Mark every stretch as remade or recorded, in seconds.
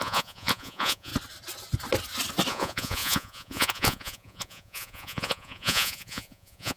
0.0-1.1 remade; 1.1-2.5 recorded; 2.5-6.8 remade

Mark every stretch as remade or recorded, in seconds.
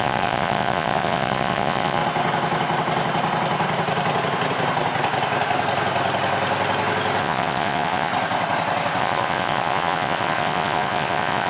0.0-2.0 remade; 2.0-7.2 recorded; 7.2-8.1 remade; 8.1-9.0 recorded; 9.0-11.5 remade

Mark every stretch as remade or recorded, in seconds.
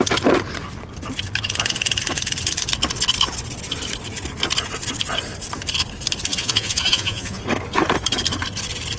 0.0-6.3 recorded; 6.3-7.4 remade; 7.4-9.0 recorded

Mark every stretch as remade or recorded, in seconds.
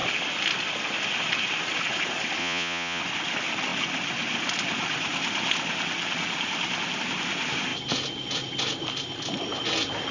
0.0-2.4 recorded; 2.4-3.0 remade; 3.0-10.1 recorded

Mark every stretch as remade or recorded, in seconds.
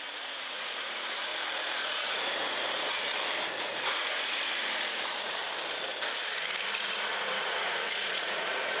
0.0-1.3 remade; 1.3-1.8 recorded; 1.8-3.1 remade; 3.1-3.6 recorded; 3.6-5.4 remade; 5.4-6.7 recorded; 6.7-8.8 remade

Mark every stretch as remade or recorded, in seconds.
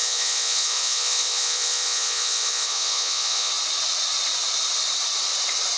0.0-3.5 remade; 3.5-5.8 recorded